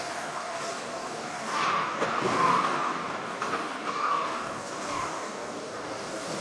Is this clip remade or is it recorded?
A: remade